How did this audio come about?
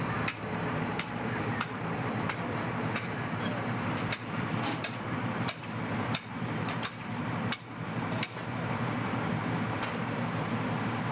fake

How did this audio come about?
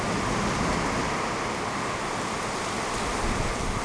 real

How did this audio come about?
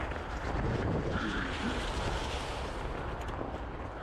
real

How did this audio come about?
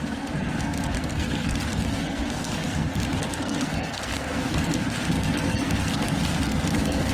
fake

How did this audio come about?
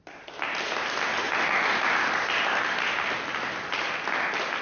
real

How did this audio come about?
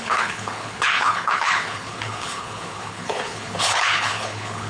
fake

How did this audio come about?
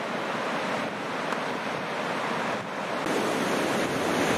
real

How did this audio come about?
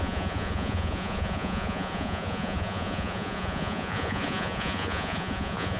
fake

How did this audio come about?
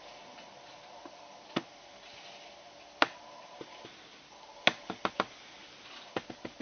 real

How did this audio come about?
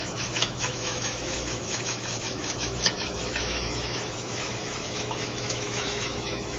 fake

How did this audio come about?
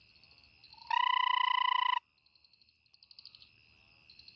real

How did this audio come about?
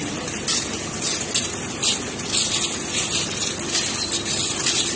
real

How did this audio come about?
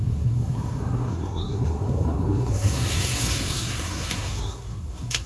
fake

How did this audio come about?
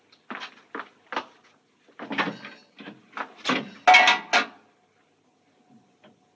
real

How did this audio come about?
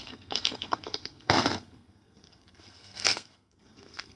fake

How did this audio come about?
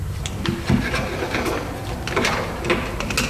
real